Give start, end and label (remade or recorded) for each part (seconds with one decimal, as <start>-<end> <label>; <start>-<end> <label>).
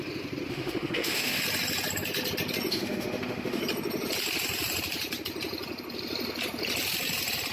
0.0-0.5 recorded; 0.5-1.4 remade; 1.4-2.7 recorded; 2.7-3.6 remade; 3.6-7.5 recorded